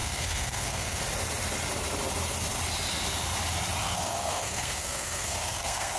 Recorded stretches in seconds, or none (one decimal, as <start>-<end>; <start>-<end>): 1.0-3.8